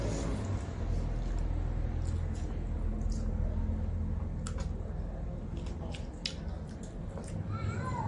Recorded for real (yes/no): yes